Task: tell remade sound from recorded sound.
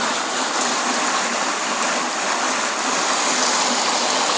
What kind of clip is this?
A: recorded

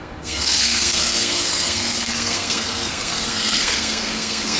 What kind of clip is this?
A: remade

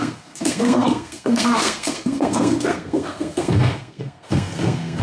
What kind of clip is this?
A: remade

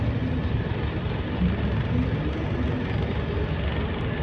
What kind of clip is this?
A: recorded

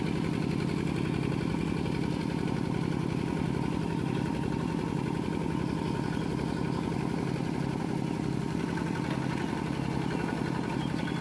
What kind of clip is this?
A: recorded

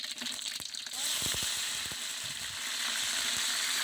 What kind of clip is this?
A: recorded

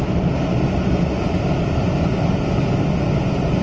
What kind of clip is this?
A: recorded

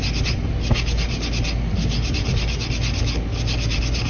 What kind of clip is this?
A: recorded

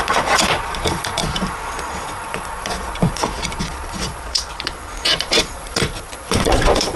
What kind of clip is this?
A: remade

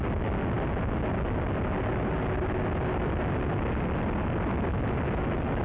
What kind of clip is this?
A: recorded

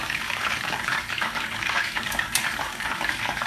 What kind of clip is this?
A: remade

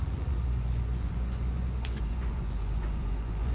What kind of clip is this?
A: remade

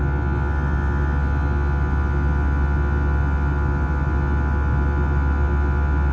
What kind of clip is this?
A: recorded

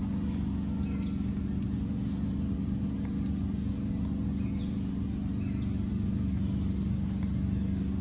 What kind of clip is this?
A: recorded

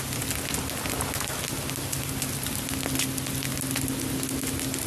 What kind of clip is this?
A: recorded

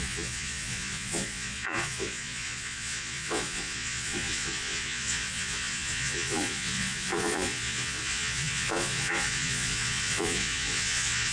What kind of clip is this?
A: remade